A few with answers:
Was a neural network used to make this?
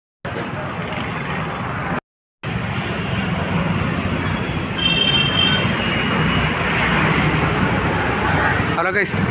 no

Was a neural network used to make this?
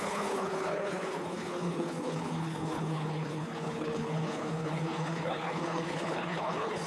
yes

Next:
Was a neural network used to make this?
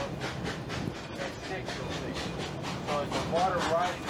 no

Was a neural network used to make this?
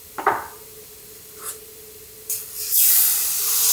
no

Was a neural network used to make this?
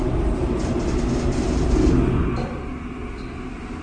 no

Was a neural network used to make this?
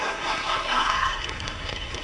yes